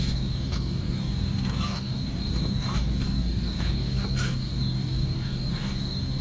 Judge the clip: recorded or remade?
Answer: remade